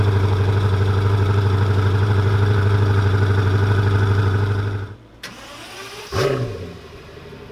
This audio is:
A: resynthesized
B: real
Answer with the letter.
A